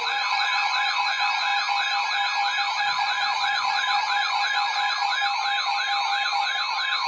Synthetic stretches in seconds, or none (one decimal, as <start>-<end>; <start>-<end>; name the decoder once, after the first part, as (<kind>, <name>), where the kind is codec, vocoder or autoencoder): 0.0-1.5 (vocoder, Vocos); 2.8-5.0